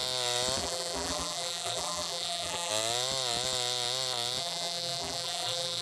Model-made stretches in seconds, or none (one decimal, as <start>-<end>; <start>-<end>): 0.6-2.7; 4.4-5.8